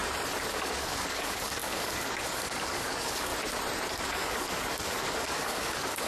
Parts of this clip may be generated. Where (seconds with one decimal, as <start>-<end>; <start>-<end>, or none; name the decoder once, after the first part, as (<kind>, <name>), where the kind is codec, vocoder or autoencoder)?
0.5-3.3 (codec, DAC); 3.9-6.1